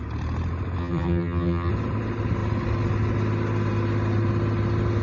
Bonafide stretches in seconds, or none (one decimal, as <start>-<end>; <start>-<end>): 0.0-0.8; 1.7-5.0